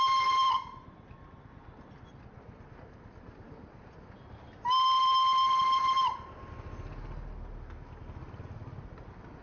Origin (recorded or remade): recorded